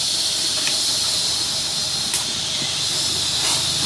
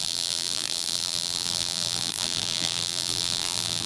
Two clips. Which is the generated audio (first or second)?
second